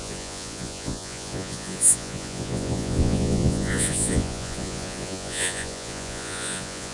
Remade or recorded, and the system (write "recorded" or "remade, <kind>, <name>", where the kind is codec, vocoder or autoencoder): remade, vocoder, Vocos